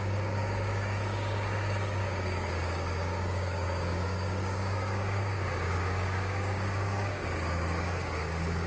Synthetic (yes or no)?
yes